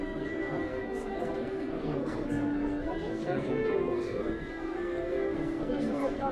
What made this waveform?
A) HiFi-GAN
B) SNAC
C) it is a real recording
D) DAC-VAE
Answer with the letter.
B